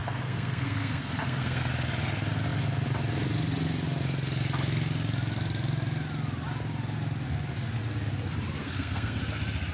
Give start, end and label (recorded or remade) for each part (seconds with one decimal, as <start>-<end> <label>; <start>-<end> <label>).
0.0-1.7 remade; 1.7-8.6 recorded; 8.6-9.2 remade; 9.2-9.7 recorded